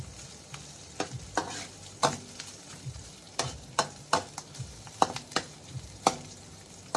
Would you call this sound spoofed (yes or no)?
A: no